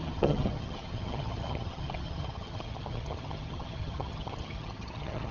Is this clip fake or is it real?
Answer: fake